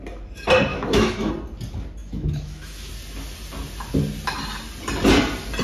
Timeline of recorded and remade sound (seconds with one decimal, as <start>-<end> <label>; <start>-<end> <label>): 0.0-0.7 recorded; 0.7-1.3 remade; 1.3-2.0 recorded; 2.0-2.9 remade; 2.9-5.6 recorded